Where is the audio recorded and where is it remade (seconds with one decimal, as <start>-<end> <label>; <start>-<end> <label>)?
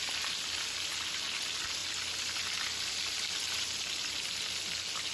0.0-5.1 recorded